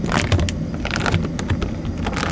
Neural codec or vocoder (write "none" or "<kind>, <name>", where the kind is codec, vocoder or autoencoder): none